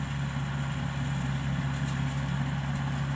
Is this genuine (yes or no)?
yes